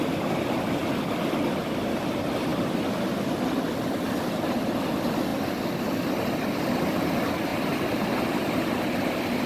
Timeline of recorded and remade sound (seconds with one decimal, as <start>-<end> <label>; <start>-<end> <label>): 0.0-2.5 recorded; 2.5-3.0 remade; 3.0-7.5 recorded; 7.5-9.5 remade